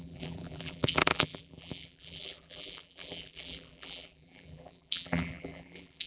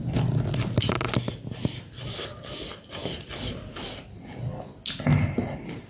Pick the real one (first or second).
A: second